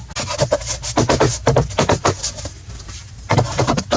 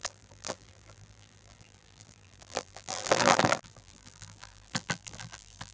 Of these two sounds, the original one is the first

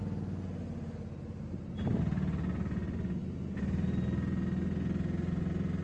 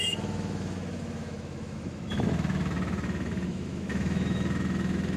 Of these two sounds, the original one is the first